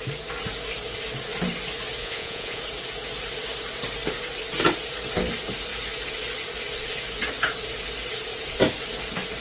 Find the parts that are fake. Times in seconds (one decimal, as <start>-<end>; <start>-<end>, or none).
2.0-2.6